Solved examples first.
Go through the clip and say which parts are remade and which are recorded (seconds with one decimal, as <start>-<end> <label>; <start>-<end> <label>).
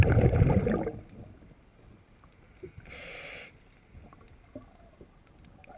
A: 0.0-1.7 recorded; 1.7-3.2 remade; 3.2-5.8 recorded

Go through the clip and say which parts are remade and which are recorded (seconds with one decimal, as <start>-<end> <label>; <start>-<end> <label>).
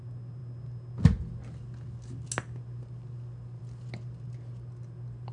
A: 0.0-5.3 recorded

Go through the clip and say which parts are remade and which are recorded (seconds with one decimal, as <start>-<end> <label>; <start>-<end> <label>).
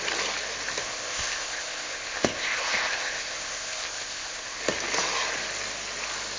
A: 0.0-0.8 recorded; 0.8-4.6 remade; 4.6-6.4 recorded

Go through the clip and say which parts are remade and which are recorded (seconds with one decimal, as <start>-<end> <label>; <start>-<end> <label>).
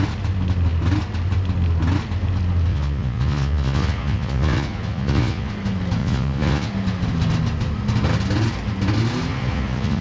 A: 0.0-2.7 recorded; 2.7-5.5 remade; 5.5-6.0 recorded; 6.0-6.7 remade; 6.7-9.3 recorded; 9.3-10.0 remade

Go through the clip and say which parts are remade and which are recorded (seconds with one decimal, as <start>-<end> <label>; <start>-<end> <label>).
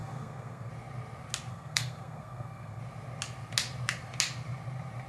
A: 0.0-0.7 remade; 0.7-1.5 recorded; 1.5-2.8 remade; 2.8-5.1 recorded